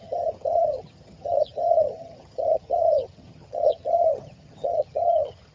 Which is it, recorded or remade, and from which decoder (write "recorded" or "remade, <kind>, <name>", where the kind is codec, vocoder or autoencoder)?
remade, vocoder, HiFi-GAN